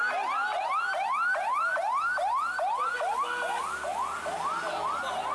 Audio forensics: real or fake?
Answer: real